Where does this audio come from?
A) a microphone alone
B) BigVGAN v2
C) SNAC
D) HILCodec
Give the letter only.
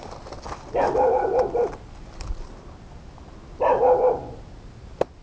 A